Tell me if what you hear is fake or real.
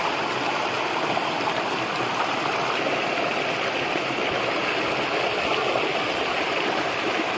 real